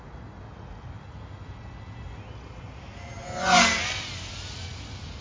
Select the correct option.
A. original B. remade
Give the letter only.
A